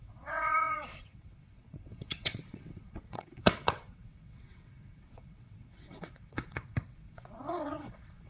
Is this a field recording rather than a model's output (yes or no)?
no